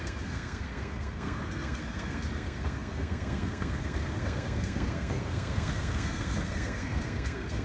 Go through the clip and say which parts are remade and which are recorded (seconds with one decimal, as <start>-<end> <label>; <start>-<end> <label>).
0.0-7.6 remade